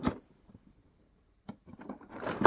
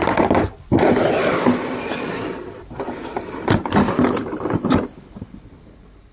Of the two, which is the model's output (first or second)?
first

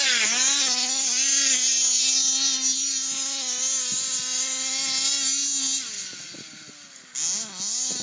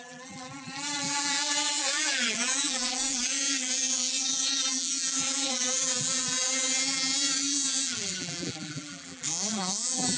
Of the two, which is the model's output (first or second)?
second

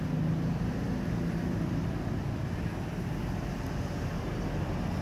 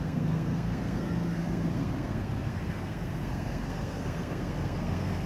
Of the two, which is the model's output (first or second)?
second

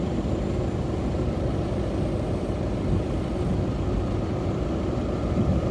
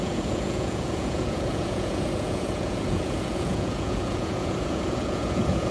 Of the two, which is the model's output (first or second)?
second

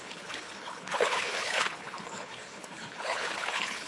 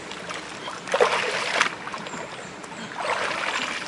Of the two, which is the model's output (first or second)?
first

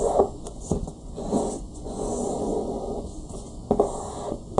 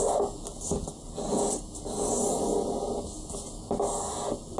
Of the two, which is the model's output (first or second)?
first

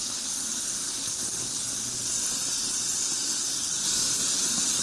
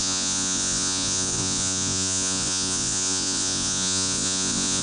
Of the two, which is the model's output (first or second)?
second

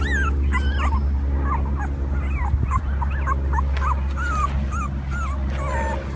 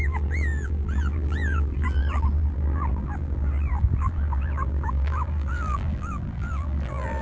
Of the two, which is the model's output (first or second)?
second